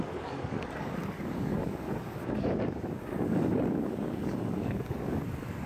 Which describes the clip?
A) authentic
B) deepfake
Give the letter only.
B